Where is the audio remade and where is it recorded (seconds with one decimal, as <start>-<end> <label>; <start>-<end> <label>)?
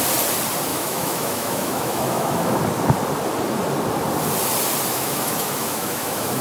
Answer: 0.0-0.7 recorded; 0.7-2.6 remade; 2.6-4.9 recorded; 4.9-6.4 remade